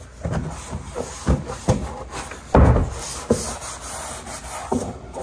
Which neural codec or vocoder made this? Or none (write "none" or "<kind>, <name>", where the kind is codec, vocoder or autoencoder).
none